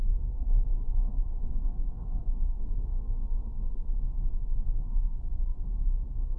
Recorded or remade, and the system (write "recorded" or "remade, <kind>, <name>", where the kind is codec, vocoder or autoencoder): remade, codec, SNAC